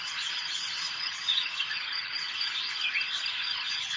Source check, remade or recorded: remade